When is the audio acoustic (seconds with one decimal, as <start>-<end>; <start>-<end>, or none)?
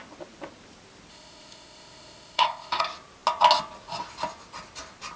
0.0-1.1; 2.8-5.2